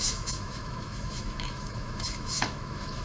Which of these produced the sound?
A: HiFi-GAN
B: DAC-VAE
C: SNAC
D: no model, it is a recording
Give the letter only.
B